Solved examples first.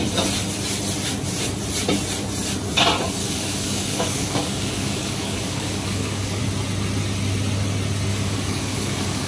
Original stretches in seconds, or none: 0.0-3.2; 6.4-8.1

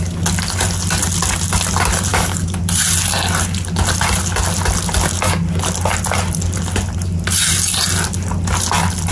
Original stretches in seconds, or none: 0.0-2.1; 2.6-9.1

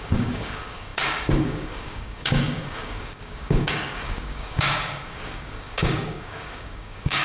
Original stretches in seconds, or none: none

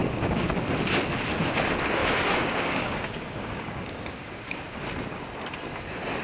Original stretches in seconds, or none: 0.5-2.0; 4.8-6.2

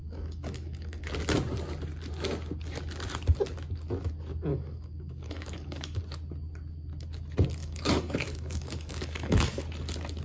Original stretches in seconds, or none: 1.1-4.5; 6.0-7.6; 9.6-10.2

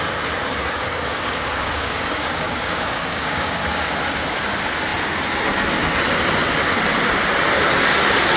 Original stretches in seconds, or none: 0.0-0.9; 3.9-8.4

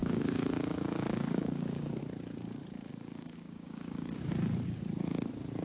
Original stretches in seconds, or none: 2.0-2.9; 4.2-5.6

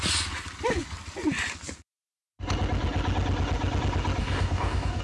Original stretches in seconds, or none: 0.0-4.2